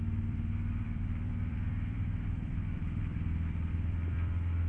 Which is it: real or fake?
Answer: fake